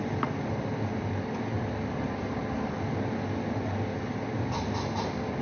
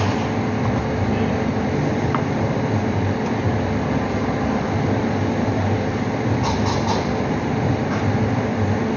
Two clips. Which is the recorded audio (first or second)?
first